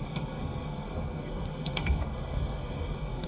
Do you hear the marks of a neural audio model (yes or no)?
yes